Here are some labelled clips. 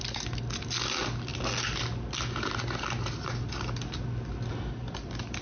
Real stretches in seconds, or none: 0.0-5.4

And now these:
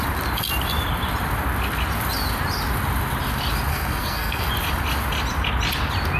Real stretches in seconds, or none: 0.0-3.7; 4.5-6.2

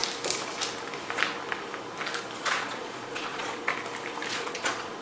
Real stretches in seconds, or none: 0.0-2.4; 3.6-4.3

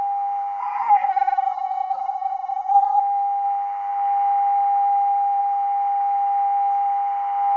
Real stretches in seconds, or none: 0.0-0.6; 3.0-7.6

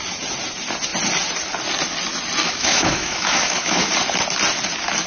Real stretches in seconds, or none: 0.0-2.4; 3.9-5.1